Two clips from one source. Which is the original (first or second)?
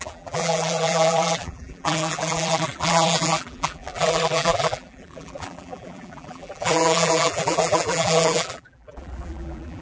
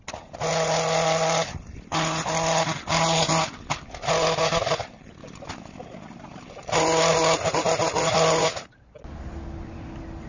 second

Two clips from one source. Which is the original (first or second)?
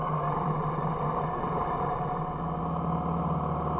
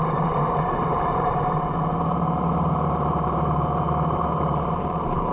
first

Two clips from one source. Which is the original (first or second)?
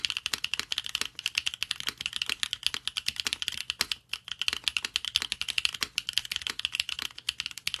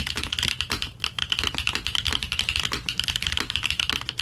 first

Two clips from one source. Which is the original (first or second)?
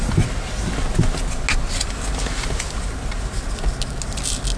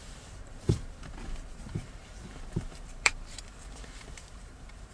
first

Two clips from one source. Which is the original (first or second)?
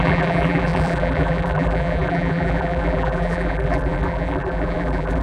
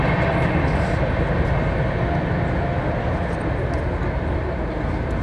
second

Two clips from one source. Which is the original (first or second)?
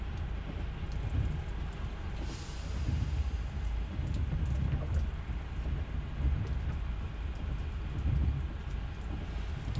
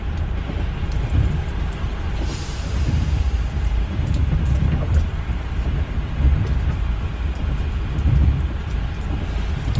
first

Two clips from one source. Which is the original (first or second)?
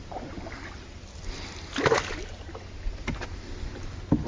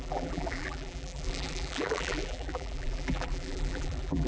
first